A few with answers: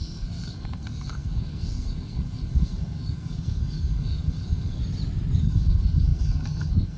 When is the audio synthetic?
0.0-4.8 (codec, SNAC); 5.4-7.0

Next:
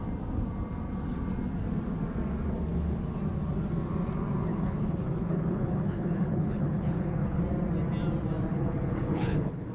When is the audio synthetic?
4.5-7.4 (codec, HILCodec); 8.5-9.7

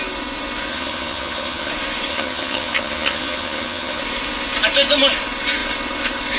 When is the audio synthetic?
0.7-1.7 (vocoder, HiFi-GAN); 2.1-4.0